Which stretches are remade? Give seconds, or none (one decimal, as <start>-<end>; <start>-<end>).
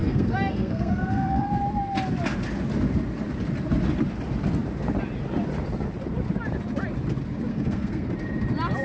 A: 0.0-1.6; 7.5-8.1